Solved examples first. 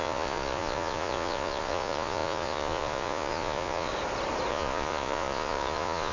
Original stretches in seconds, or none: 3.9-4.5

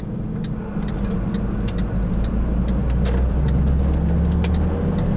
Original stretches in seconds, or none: 0.0-5.2

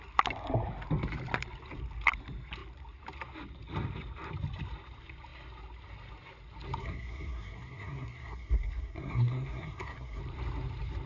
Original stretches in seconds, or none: 0.0-6.8; 10.2-11.1